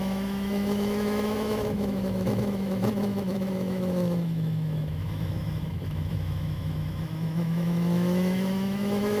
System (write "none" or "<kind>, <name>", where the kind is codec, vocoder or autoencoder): autoencoder, DAC-VAE